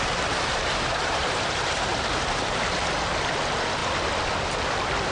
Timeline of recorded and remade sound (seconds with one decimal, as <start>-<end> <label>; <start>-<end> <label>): 0.0-0.5 recorded; 0.5-2.6 remade; 2.6-5.1 recorded